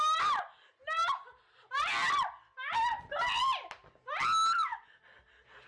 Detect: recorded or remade recorded